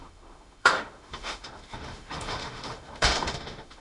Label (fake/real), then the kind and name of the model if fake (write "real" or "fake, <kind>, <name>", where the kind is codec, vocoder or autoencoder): fake, autoencoder, DAC-VAE